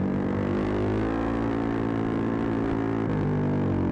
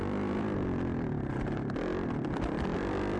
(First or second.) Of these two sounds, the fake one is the second